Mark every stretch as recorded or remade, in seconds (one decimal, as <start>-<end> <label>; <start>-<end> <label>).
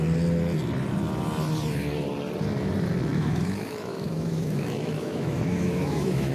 0.0-3.1 recorded; 3.1-6.3 remade